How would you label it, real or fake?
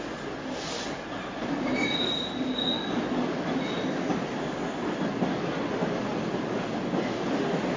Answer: real